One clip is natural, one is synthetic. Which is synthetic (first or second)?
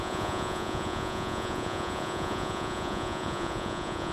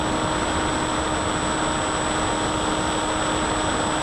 first